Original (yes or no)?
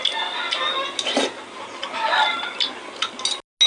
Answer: yes